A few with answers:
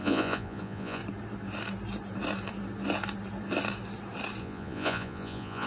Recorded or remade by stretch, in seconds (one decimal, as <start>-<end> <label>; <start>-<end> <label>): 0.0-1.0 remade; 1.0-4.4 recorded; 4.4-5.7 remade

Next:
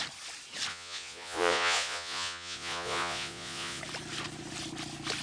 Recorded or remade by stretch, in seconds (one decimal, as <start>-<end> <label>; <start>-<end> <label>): 0.0-0.7 recorded; 0.7-3.8 remade; 3.8-5.2 recorded

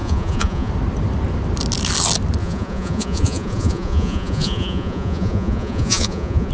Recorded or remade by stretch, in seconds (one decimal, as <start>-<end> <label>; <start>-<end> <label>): 0.0-0.7 remade; 0.7-2.4 recorded; 2.4-6.5 remade

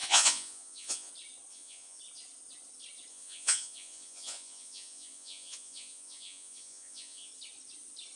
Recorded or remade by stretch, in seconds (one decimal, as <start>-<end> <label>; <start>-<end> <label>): 0.0-1.1 remade; 1.1-1.5 recorded; 1.5-2.0 remade; 2.0-3.1 recorded; 3.1-7.3 remade; 7.3-8.2 recorded

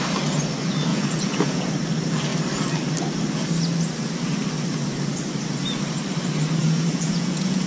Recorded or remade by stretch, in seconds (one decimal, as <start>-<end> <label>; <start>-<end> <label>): 0.0-0.9 recorded; 0.9-1.7 remade; 1.7-6.6 recorded; 6.6-7.7 remade

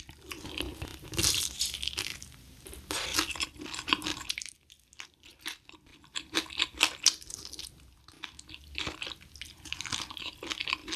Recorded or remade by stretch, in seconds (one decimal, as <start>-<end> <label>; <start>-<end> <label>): 0.0-11.0 recorded

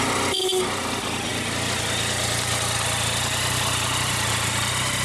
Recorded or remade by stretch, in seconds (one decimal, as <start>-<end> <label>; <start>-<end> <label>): 0.0-5.0 recorded

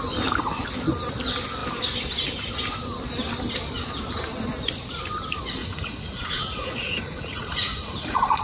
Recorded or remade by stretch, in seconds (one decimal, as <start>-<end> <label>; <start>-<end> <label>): 0.0-5.6 recorded; 5.6-8.4 remade